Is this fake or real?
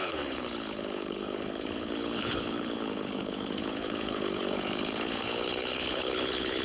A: fake